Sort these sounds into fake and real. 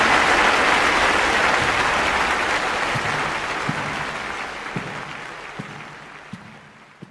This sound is real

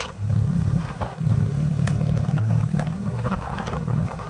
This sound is fake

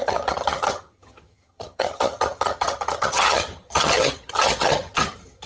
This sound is fake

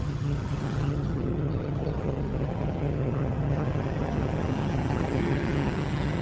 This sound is fake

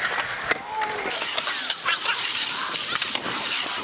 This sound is real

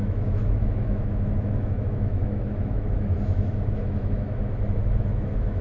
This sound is fake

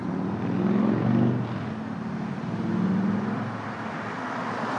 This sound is real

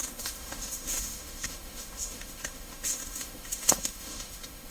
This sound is fake